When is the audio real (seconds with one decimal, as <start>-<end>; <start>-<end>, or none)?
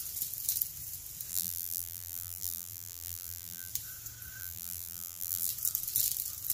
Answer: 0.0-1.3; 3.7-4.4; 5.5-6.5